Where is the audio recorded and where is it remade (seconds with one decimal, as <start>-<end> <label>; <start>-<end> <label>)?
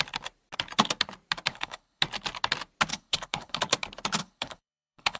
0.0-1.5 recorded; 1.5-2.0 remade; 2.0-2.9 recorded; 2.9-3.6 remade; 3.6-4.2 recorded; 4.2-5.2 remade